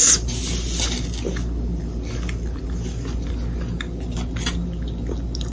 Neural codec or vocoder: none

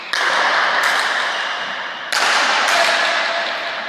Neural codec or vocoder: none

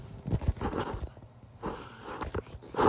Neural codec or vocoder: none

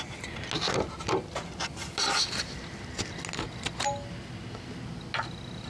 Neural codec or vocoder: none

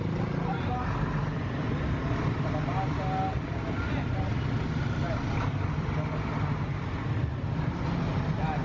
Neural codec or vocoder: none